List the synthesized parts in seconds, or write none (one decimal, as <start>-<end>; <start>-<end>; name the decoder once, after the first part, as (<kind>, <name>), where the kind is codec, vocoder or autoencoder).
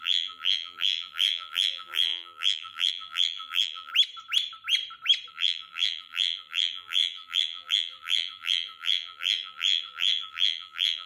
0.0-3.9 (vocoder, BigVGAN v2); 5.3-11.1